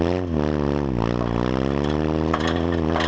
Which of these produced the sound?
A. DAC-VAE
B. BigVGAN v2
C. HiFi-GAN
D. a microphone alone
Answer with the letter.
D